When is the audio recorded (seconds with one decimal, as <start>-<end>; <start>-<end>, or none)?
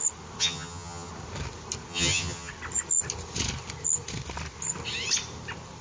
0.0-0.4; 1.1-1.9; 2.5-5.8